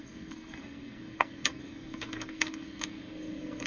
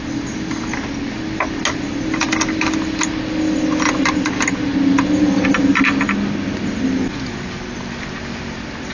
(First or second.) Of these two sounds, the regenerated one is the first